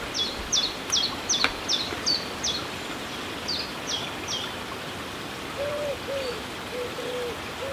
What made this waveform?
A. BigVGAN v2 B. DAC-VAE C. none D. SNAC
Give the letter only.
C